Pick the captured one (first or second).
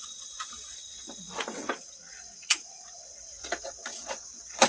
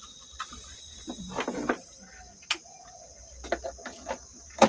second